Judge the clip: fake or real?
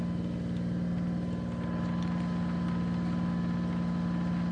real